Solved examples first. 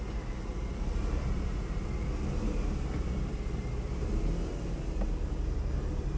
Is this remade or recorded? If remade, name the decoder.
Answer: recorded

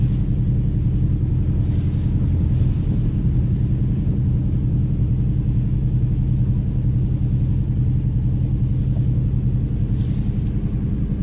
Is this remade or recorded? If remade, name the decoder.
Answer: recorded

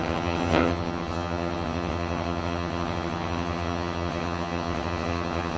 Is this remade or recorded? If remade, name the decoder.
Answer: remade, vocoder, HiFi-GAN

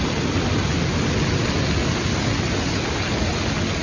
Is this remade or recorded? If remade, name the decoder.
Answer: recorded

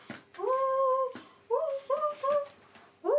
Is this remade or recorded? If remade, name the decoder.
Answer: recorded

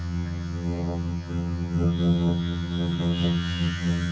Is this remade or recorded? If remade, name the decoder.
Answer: remade, vocoder, HiFi-GAN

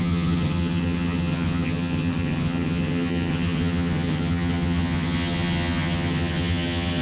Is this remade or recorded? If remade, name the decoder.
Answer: remade, vocoder, HiFi-GAN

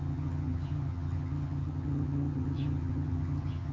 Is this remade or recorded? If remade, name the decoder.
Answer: remade, vocoder, HiFi-GAN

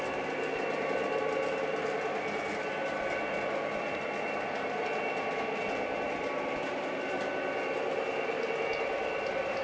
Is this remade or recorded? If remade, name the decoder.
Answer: recorded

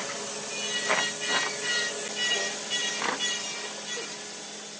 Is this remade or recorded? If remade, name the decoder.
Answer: recorded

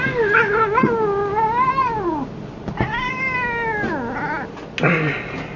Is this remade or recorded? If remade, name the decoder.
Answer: recorded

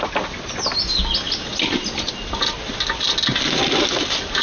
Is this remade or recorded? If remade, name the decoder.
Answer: recorded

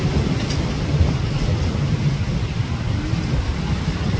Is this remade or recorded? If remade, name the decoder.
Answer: recorded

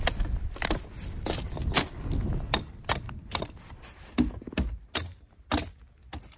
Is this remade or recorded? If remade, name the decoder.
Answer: recorded